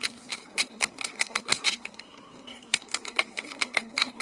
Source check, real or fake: fake